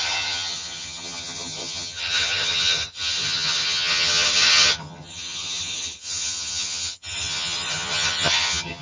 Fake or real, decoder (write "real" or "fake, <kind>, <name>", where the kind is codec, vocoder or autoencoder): fake, vocoder, HiFi-GAN